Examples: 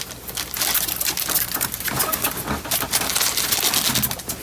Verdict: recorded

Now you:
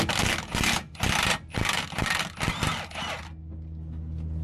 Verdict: recorded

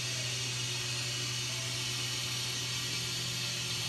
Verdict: recorded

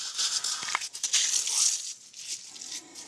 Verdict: recorded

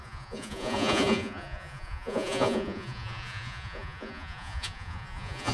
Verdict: remade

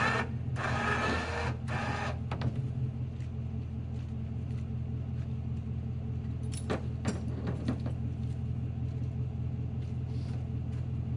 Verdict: recorded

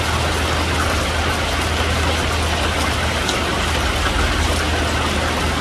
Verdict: recorded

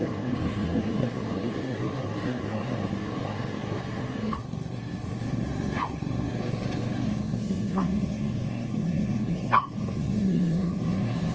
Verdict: remade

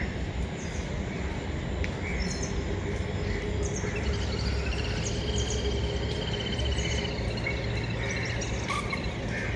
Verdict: recorded